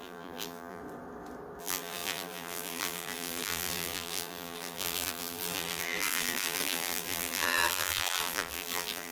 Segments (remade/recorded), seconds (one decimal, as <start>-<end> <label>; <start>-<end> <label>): 0.0-0.8 remade; 0.8-1.6 recorded; 1.6-9.1 remade